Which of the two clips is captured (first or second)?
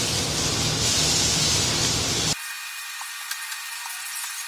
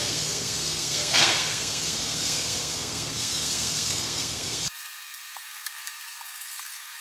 first